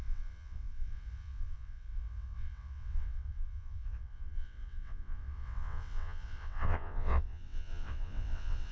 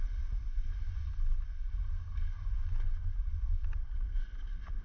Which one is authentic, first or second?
second